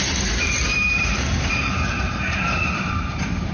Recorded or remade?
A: remade